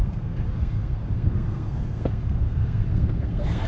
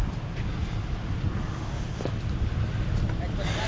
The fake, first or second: first